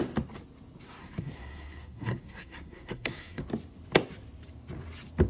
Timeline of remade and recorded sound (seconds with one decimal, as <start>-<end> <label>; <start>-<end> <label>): 0.0-1.0 recorded; 1.0-3.4 remade; 3.4-5.3 recorded